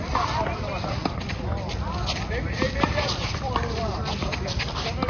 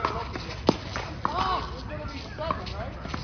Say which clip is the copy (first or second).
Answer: first